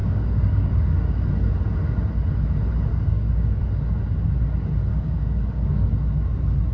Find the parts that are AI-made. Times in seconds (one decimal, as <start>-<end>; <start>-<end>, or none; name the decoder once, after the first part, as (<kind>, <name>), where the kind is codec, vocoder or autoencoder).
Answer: 0.0-1.2 (codec, DAC); 2.9-3.6; 4.9-5.9